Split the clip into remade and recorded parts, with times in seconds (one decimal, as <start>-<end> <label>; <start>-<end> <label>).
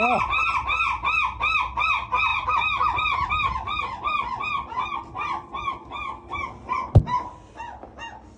0.0-2.3 recorded; 2.3-3.3 remade; 3.3-8.4 recorded